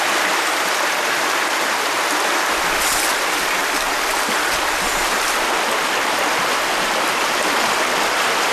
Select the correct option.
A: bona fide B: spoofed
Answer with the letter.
A